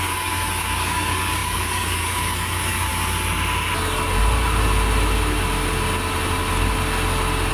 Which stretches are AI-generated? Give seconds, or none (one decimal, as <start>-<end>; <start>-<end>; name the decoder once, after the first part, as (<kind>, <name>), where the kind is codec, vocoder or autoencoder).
0.0-2.9 (codec, DAC)